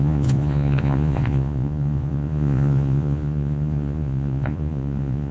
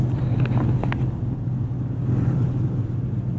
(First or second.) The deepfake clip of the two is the first